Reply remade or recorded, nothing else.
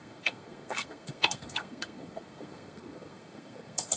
remade